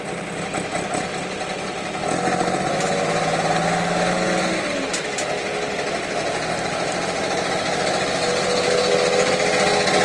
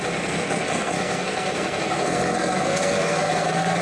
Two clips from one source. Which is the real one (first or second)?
first